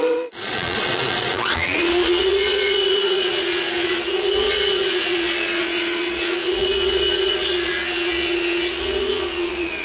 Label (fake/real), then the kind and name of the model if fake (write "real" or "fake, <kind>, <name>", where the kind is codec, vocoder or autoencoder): fake, vocoder, Vocos